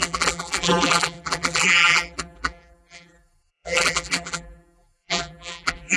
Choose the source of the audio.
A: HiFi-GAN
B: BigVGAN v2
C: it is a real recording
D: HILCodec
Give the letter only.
B